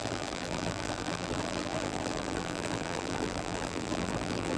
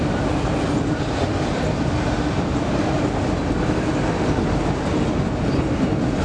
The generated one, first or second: first